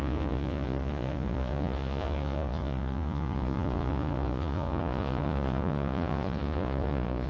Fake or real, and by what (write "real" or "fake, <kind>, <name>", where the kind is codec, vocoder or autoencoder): fake, vocoder, Vocos